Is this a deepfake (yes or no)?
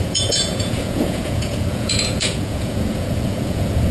yes